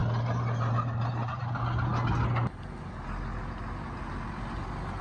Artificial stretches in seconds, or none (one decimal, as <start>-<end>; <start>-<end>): none